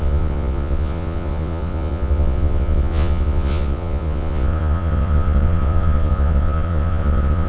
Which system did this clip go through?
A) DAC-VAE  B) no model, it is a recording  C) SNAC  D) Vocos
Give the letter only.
D